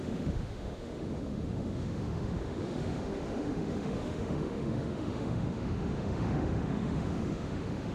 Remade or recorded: remade